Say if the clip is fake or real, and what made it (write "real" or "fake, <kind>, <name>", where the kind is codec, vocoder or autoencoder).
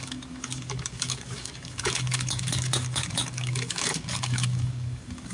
fake, codec, DAC